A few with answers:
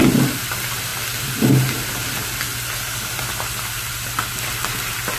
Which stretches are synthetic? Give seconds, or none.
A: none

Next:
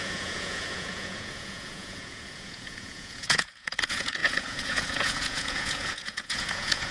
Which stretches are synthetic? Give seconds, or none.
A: 0.0-6.9 (vocoder, Vocos)

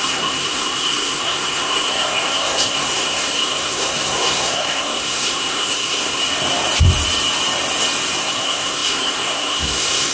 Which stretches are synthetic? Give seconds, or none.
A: 0.0-6.2 (codec, SNAC); 8.2-10.1

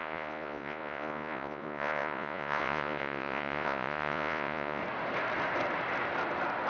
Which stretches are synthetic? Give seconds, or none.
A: 0.0-4.8 (vocoder, Vocos)

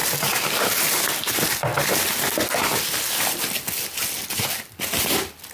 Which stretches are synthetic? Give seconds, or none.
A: none

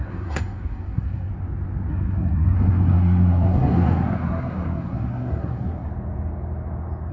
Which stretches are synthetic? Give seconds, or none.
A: 0.0-1.3 (codec, SNAC); 1.9-5.9